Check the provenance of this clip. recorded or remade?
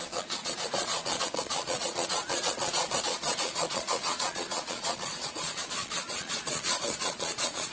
remade